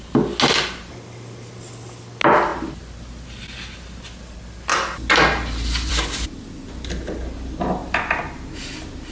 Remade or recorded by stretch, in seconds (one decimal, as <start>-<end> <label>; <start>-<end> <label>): 0.0-9.1 recorded